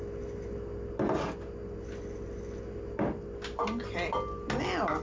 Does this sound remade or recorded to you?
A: recorded